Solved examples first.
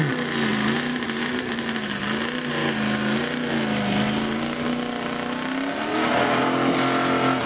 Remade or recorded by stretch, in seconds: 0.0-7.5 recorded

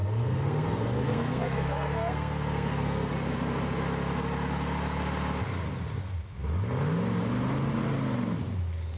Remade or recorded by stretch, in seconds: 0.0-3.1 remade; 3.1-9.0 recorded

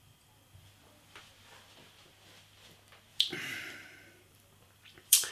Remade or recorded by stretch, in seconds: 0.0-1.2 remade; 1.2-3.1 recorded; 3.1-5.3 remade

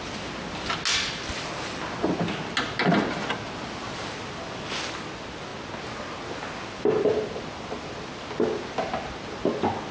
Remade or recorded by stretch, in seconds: 0.0-9.9 recorded